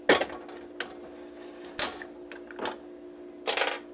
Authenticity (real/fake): real